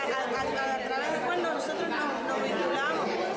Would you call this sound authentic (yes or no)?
yes